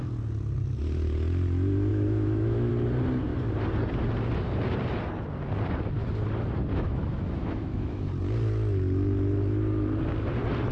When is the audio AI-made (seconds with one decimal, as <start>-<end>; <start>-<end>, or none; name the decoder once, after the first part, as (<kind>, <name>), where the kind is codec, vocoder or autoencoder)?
1.9-2.7 (autoencoder, DAC-VAE); 6.7-8.1